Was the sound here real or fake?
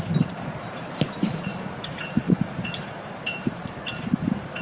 fake